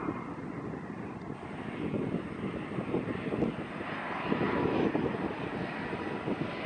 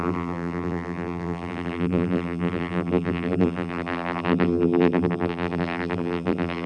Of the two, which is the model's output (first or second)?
second